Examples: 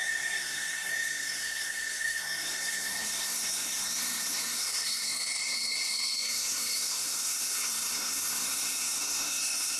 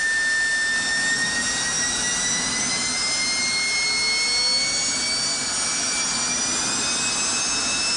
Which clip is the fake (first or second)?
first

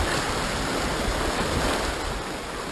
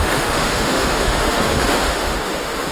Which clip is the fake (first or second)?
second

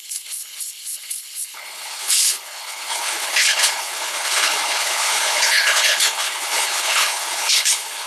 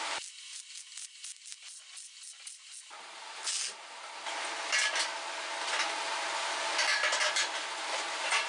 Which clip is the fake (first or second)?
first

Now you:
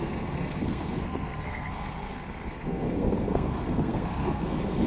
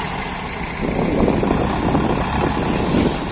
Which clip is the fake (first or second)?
first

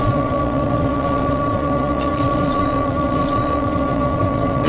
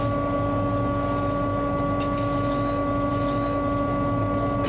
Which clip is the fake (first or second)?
first